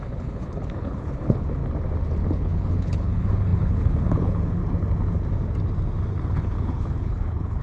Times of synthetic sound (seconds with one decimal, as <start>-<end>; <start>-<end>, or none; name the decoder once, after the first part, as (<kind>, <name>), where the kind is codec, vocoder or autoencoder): 0.0-1.6 (codec, HILCodec); 2.3-4.6; 6.3-7.6